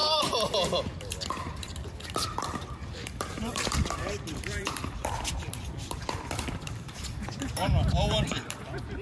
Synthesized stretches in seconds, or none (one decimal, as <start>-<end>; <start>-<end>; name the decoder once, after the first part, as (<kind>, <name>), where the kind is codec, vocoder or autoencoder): 0.0-9.0 (vocoder, BigVGAN v2)